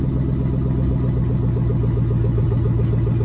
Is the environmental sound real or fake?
real